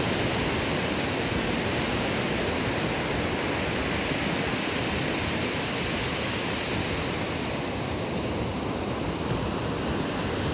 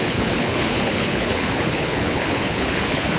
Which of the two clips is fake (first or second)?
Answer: second